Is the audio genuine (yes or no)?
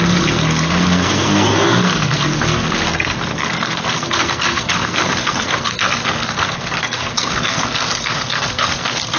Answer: no